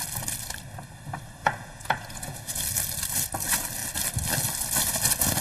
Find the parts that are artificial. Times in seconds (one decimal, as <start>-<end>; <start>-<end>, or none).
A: 1.4-2.6